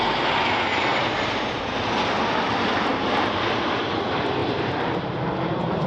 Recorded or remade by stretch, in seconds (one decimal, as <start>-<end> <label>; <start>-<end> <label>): 0.0-0.9 recorded; 0.9-1.6 remade; 1.6-4.4 recorded; 4.4-5.0 remade; 5.0-5.9 recorded